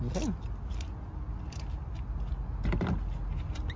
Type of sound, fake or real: real